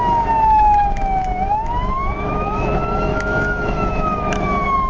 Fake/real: fake